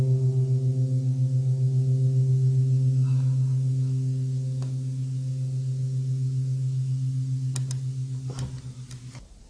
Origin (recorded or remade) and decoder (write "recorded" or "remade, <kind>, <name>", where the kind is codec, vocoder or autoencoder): recorded